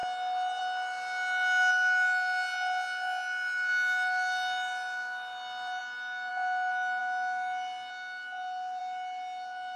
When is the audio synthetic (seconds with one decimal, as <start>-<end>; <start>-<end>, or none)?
none